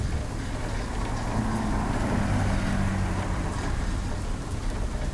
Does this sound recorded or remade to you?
recorded